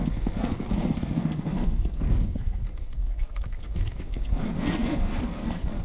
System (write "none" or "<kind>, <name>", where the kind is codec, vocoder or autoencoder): codec, SNAC